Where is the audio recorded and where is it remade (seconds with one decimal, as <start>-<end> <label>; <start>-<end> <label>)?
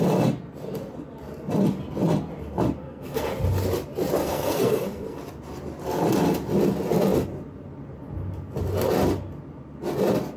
0.0-2.8 recorded; 2.8-3.3 remade; 3.3-4.2 recorded; 4.2-5.2 remade; 5.2-10.4 recorded